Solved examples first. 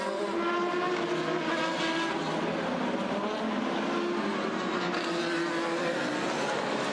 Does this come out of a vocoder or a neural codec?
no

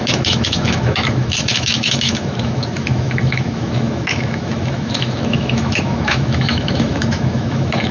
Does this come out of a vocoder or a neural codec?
yes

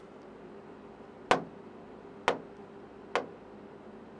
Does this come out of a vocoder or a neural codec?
no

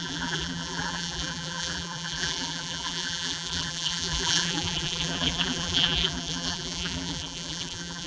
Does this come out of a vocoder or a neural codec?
yes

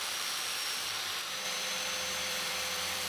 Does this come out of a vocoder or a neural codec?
yes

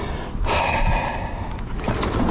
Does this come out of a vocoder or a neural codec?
no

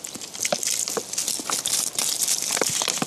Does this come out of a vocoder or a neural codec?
no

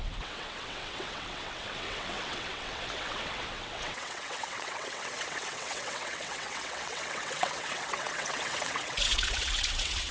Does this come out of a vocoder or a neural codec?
yes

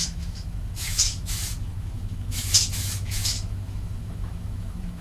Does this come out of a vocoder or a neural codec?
yes